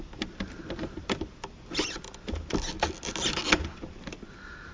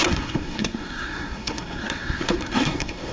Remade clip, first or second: second